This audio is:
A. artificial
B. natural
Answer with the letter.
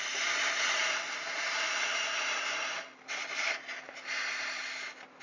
B